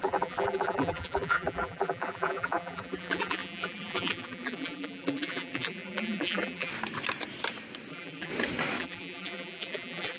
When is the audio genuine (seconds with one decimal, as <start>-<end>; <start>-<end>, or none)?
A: 6.7-7.9; 8.3-8.8